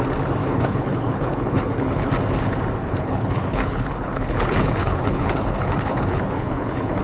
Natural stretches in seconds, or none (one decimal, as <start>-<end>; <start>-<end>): 0.0-0.4; 2.1-2.8